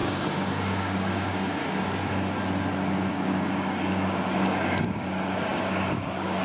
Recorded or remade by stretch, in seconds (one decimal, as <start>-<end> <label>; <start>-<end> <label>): 0.0-1.6 remade; 1.6-3.1 recorded; 3.1-6.4 remade